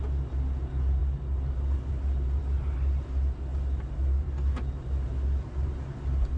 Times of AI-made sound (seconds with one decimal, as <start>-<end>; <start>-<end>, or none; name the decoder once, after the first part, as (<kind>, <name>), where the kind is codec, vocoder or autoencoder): none

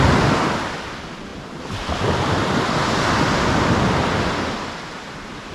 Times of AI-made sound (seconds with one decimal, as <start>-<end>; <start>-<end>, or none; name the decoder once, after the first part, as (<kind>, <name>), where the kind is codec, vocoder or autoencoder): none

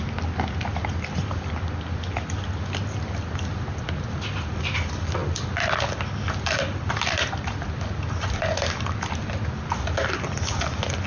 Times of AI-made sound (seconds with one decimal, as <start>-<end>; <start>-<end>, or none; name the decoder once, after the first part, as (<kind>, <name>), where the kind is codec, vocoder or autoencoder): none

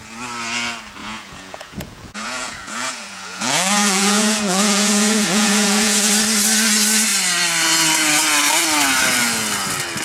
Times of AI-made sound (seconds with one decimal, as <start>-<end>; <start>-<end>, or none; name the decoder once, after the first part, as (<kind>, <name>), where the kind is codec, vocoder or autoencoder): 1.0-6.1 (vocoder, Vocos)

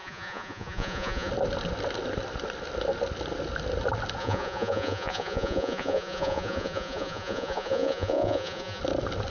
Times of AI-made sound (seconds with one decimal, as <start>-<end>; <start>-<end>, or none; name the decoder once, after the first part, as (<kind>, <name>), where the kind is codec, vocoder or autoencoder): 0.0-1.3 (vocoder, Vocos); 4.2-8.8

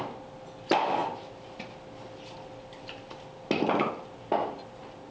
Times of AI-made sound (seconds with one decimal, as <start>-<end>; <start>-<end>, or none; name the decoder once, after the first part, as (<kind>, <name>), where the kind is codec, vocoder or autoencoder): none

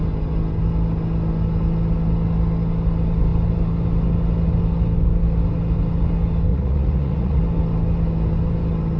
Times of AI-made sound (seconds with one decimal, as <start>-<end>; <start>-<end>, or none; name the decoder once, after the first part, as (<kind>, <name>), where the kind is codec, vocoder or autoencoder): 6.5-7.4 (vocoder, Vocos)

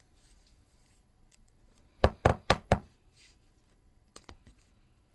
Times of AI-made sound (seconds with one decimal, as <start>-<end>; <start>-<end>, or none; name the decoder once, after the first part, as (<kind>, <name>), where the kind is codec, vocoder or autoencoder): 0.0-5.1 (vocoder, Vocos)